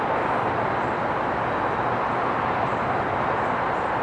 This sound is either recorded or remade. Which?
recorded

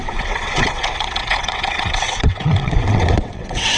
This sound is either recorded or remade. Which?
remade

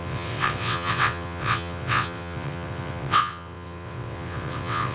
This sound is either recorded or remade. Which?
remade